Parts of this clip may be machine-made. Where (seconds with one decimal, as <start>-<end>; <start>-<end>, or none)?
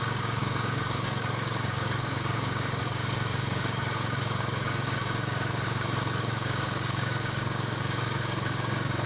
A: 0.0-9.1